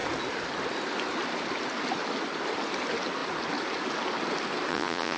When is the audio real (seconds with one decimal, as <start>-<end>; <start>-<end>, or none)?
0.0-4.7